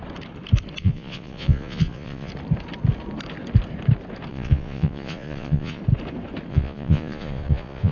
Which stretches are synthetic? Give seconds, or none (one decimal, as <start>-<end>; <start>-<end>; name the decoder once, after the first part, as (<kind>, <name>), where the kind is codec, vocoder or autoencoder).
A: 0.8-2.3 (vocoder, Vocos); 4.3-5.8; 6.5-7.9